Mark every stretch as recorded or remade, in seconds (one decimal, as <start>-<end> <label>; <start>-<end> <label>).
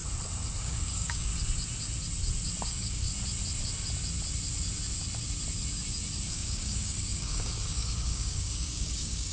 0.0-0.6 recorded; 0.6-1.3 remade; 1.3-2.7 recorded; 2.7-3.1 remade; 3.1-6.3 recorded; 6.3-9.3 remade